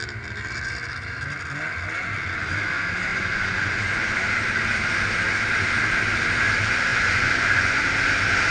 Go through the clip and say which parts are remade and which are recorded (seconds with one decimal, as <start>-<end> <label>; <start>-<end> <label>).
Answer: 0.0-3.1 recorded; 3.1-4.2 remade; 4.2-6.9 recorded; 6.9-7.8 remade; 7.8-8.5 recorded